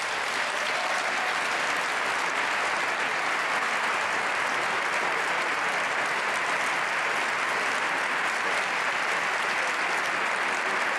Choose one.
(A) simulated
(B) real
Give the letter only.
B